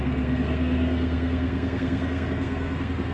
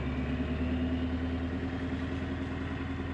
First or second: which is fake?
first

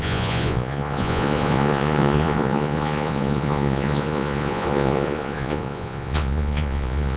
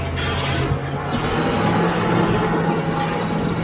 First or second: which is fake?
first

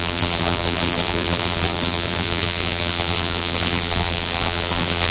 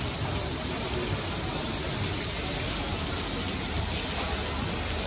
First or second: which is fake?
first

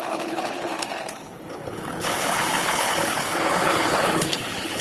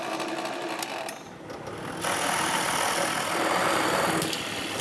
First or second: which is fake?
first